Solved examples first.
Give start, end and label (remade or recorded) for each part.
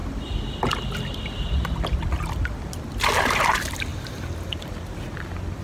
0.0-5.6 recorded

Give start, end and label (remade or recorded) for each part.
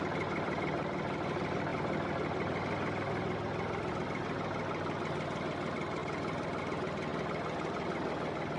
0.0-7.1 recorded; 7.1-8.6 remade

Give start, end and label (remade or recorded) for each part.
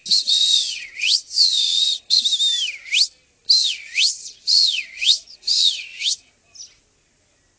0.0-2.2 remade; 2.2-3.6 recorded; 3.6-6.3 remade; 6.3-7.6 recorded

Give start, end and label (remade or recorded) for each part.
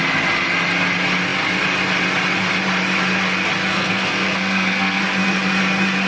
0.0-3.7 recorded; 3.7-5.0 remade; 5.0-6.1 recorded